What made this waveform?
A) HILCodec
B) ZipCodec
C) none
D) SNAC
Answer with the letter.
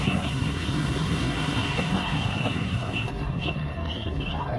D